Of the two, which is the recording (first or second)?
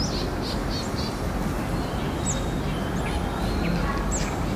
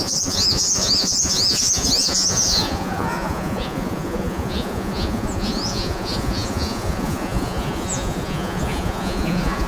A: first